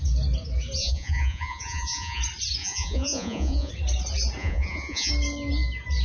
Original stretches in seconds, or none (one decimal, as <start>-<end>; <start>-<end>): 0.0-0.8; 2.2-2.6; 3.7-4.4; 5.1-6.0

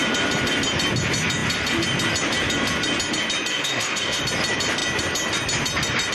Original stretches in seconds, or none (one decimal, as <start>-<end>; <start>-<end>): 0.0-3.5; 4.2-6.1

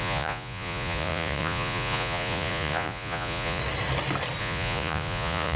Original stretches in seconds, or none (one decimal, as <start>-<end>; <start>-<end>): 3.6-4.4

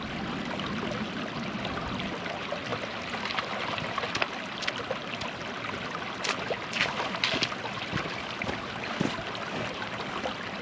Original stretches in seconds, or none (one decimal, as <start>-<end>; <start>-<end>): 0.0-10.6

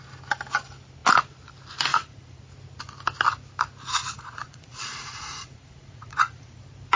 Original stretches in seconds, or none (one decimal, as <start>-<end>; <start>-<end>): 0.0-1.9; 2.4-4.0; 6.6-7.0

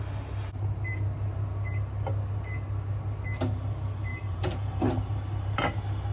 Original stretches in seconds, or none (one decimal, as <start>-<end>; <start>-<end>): 0.0-4.1; 4.9-6.1